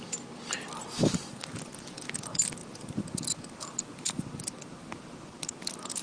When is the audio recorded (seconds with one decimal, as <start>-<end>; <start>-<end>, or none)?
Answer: 0.0-6.0